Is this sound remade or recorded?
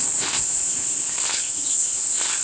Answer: remade